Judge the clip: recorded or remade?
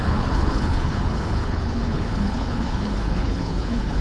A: remade